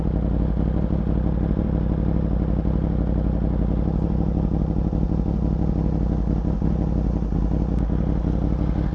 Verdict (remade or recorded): recorded